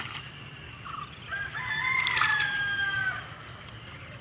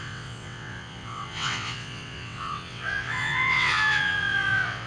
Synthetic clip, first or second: second